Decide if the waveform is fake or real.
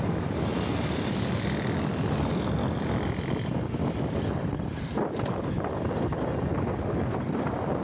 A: real